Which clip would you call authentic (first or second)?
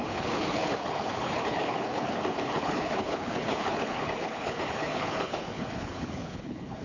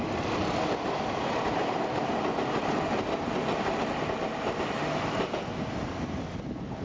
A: second